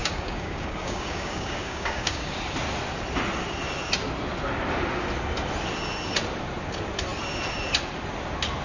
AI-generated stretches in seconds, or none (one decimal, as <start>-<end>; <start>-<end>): 0.0-2.3

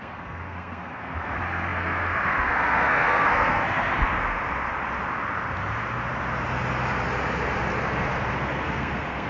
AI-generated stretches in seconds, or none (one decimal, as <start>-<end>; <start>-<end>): 0.0-3.9; 8.3-9.3

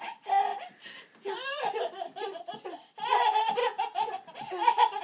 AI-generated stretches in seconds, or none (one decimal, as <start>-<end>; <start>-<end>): 3.6-4.1

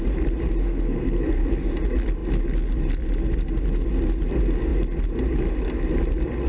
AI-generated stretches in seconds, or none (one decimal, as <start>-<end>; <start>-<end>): 0.6-1.7

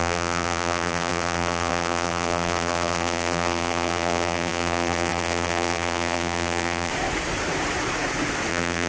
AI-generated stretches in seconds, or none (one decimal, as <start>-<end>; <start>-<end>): 0.0-6.9; 8.5-8.9